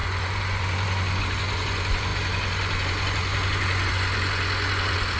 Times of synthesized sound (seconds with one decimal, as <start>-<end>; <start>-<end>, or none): 0.0-5.2